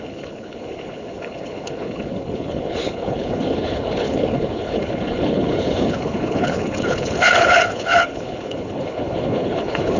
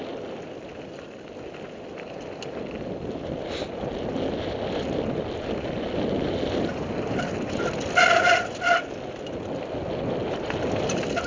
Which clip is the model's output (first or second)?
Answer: first